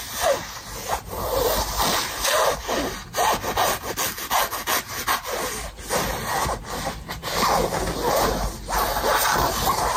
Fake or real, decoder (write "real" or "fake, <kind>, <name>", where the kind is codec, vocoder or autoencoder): real